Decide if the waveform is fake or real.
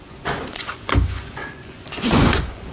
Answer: fake